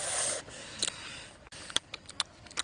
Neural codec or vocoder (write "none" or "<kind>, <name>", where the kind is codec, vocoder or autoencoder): none